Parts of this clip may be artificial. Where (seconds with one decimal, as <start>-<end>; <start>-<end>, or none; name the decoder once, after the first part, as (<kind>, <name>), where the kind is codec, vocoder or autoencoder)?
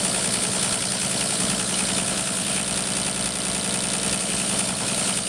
0.0-2.6 (codec, HILCodec); 4.2-5.3